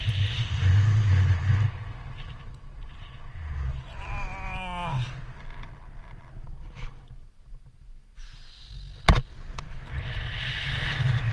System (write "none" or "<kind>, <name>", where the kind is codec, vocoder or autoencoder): none